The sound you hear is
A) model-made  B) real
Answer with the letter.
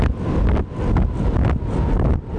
B